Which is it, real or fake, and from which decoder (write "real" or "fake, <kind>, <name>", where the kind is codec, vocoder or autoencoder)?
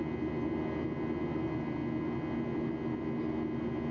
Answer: real